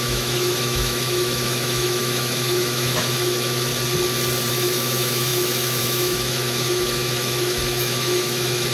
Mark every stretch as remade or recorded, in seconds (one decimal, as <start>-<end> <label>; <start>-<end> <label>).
0.0-3.7 remade; 3.7-4.5 recorded; 4.5-8.7 remade